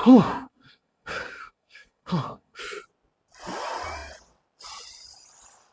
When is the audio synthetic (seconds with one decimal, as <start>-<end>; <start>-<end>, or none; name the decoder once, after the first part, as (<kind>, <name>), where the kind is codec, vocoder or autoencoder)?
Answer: 0.0-2.6 (codec, SNAC)